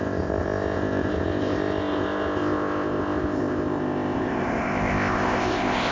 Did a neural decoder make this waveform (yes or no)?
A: yes